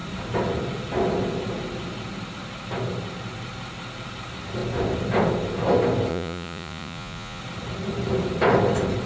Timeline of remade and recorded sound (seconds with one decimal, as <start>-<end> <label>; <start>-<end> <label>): 0.0-6.1 recorded; 6.1-7.4 remade; 7.4-9.1 recorded